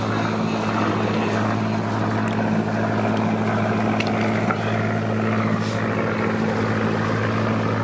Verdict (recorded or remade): recorded